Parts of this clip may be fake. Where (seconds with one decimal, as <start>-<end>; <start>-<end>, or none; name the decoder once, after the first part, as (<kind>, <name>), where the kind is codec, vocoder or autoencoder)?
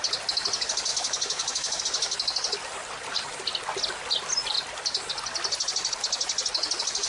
0.9-1.8 (autoencoder, DAC-VAE)